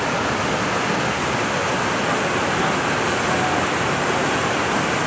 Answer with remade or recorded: recorded